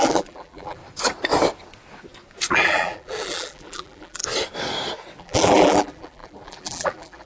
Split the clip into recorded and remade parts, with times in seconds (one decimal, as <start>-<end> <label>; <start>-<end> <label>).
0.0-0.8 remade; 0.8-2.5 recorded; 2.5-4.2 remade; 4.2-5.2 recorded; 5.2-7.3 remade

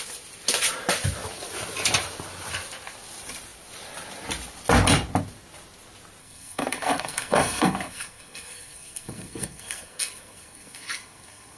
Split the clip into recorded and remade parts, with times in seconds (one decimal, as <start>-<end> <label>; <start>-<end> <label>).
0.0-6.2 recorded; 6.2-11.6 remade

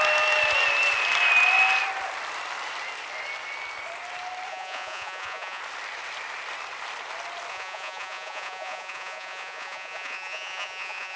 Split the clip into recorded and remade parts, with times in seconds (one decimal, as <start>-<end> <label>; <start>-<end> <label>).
0.0-4.5 recorded; 4.5-5.6 remade; 5.6-7.5 recorded; 7.5-11.2 remade

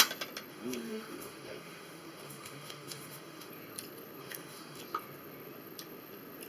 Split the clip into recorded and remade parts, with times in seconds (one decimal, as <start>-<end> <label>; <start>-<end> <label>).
0.0-0.5 recorded; 0.5-3.5 remade; 3.5-4.2 recorded; 4.2-4.8 remade; 4.8-6.5 recorded

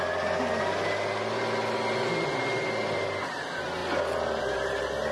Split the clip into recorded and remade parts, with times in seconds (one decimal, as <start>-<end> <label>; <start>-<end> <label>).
0.0-5.1 recorded

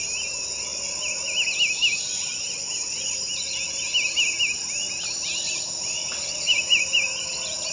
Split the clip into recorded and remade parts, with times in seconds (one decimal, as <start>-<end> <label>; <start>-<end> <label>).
0.0-7.7 recorded